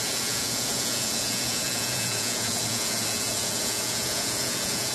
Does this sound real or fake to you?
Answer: fake